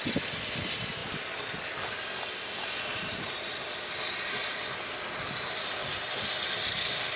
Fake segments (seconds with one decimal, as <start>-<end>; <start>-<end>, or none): none